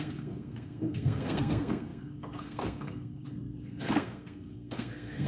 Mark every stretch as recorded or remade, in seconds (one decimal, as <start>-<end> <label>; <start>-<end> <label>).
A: 0.0-5.3 remade